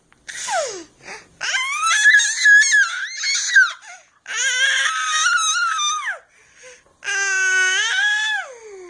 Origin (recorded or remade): recorded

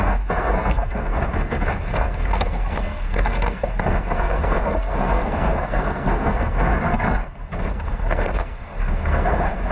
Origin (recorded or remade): remade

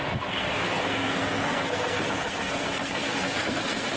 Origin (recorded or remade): remade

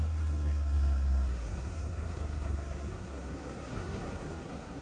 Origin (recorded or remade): remade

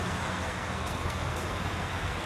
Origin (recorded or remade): remade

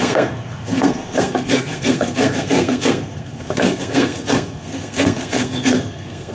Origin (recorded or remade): remade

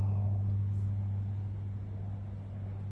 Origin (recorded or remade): recorded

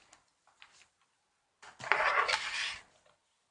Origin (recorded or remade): recorded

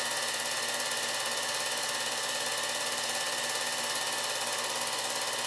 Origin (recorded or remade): recorded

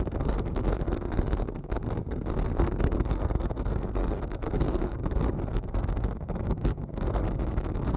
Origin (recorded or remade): remade